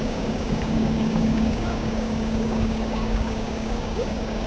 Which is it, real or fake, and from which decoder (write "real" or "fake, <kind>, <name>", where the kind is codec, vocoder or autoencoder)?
fake, codec, DAC